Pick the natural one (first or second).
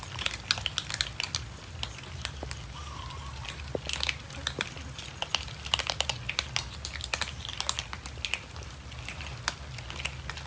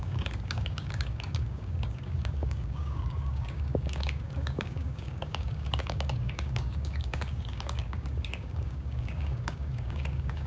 first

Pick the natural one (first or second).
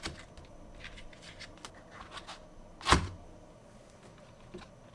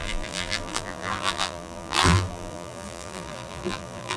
first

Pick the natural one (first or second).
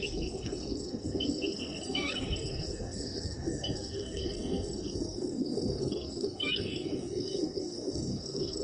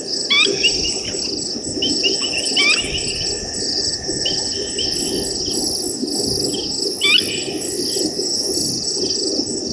second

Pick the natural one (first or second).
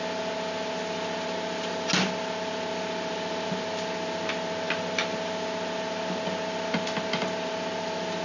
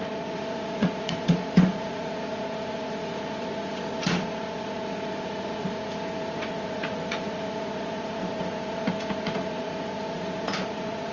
first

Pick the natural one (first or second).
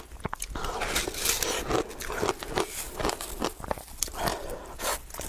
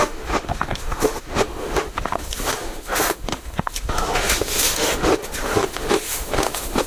first